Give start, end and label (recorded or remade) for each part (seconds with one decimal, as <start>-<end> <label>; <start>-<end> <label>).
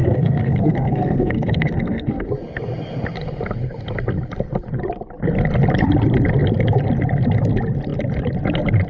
0.0-2.3 remade; 2.3-8.9 recorded